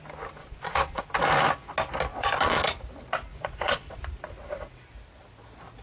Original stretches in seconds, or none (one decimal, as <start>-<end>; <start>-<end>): 0.0-0.4; 1.1-2.1; 2.7-3.3; 4.0-5.8